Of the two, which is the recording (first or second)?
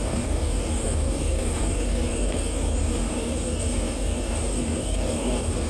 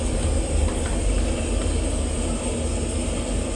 second